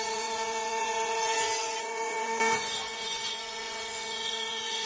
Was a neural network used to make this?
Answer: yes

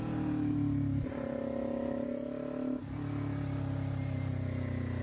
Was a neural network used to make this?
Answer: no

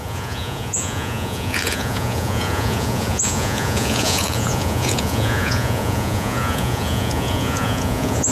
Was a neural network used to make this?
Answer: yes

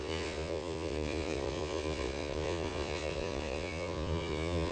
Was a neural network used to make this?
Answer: yes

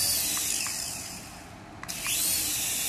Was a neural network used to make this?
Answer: no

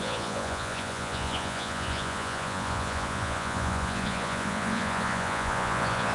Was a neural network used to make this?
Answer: yes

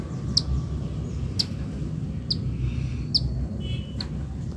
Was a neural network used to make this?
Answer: no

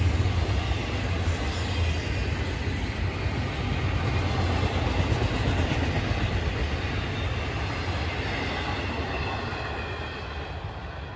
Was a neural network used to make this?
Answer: no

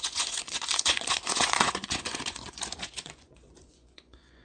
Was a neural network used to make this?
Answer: yes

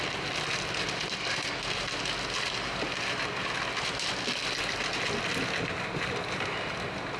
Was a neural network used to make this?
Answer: no